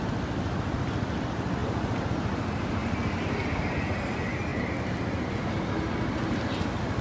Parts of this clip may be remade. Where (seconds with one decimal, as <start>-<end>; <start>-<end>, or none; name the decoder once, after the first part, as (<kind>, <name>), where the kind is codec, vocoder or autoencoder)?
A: 1.6-2.1 (vocoder, BigVGAN v2); 4.5-5.3